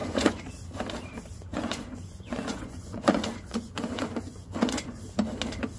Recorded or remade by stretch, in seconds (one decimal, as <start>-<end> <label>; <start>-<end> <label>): 0.0-0.5 remade; 0.5-1.5 recorded; 1.5-5.0 remade; 5.0-5.8 recorded